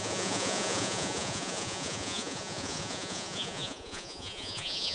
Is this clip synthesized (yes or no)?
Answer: yes